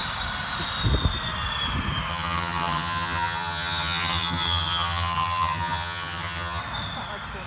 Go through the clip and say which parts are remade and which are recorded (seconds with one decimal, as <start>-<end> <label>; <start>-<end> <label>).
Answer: 0.0-2.1 recorded; 2.1-6.6 remade; 6.6-7.5 recorded